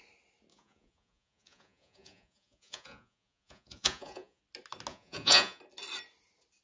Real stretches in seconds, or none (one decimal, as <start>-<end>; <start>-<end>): 0.0-0.5; 4.4-4.9; 5.6-6.6